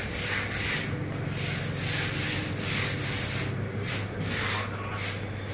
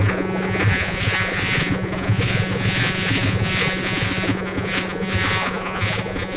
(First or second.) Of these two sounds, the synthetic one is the second